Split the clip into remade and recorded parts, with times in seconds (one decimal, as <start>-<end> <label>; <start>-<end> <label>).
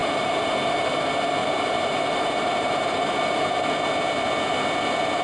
0.0-0.9 remade; 0.9-1.4 recorded; 1.4-3.7 remade; 3.7-5.2 recorded